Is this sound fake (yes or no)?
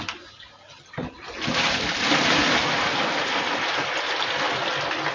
no